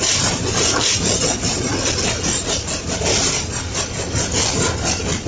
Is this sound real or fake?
real